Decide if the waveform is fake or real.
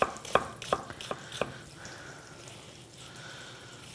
real